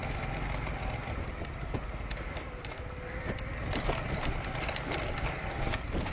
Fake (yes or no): no